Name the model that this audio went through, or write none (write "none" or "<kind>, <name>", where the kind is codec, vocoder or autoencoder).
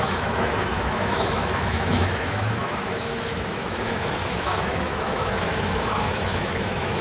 autoencoder, DAC-VAE